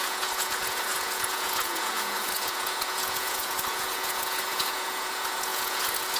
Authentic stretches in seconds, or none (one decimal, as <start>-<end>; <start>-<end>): none